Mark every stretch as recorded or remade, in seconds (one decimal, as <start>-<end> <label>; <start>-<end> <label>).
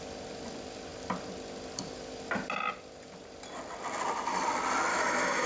0.0-4.9 recorded; 4.9-5.5 remade